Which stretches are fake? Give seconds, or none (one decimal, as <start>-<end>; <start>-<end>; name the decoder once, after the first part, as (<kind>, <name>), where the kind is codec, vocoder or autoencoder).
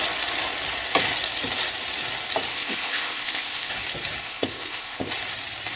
2.5-3.7 (codec, ZipCodec); 4.2-5.1